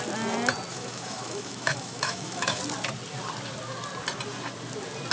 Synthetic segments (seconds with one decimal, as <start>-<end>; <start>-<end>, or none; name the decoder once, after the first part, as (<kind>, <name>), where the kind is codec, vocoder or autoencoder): 0.7-2.6 (autoencoder, DAC-VAE)